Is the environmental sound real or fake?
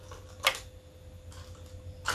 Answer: real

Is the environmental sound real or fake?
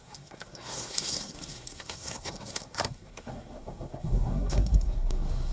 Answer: fake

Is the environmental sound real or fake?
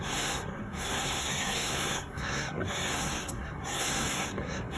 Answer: fake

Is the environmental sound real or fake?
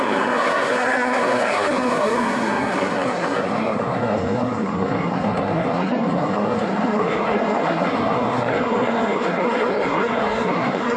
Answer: fake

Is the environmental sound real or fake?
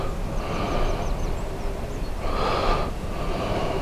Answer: real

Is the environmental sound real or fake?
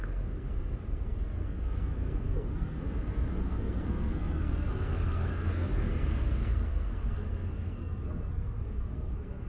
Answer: fake